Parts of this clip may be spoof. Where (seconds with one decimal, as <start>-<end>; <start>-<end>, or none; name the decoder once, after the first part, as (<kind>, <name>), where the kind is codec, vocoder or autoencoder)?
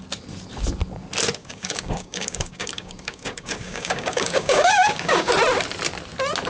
1.4-5.3 (codec, DAC)